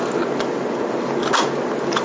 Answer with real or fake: real